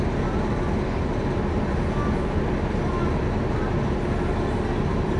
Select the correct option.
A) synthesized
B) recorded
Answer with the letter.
B